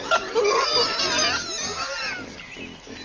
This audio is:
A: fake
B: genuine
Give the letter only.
B